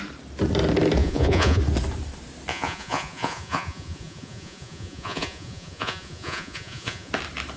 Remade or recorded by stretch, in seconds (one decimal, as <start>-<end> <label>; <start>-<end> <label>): 0.0-1.0 recorded; 1.0-1.6 remade; 1.6-2.5 recorded; 2.5-7.1 remade; 7.1-7.6 recorded